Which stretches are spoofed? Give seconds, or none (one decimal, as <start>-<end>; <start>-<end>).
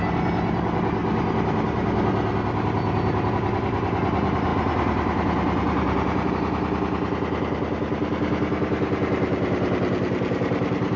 none